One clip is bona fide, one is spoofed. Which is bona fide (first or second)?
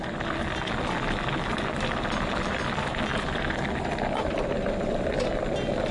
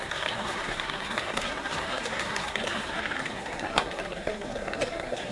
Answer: first